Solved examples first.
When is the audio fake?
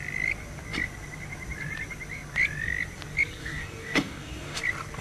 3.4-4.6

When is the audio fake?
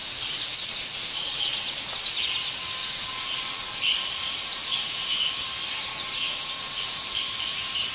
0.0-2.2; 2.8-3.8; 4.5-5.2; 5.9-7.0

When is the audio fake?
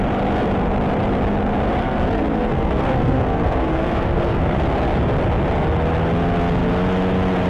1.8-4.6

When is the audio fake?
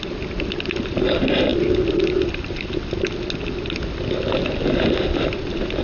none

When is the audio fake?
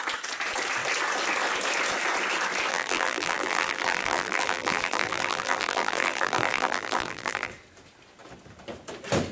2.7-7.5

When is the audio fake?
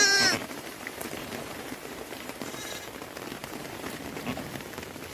0.4-2.7; 3.4-4.0